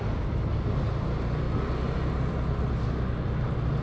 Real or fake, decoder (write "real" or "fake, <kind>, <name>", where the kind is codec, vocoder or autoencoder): real